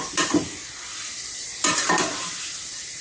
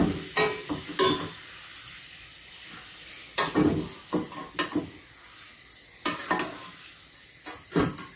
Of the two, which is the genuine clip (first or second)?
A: second